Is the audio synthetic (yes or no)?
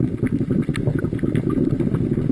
no